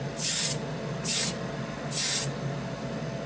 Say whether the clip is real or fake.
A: real